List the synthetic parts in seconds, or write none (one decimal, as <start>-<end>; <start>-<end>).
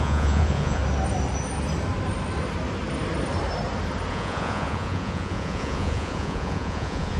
0.0-0.8; 4.1-7.2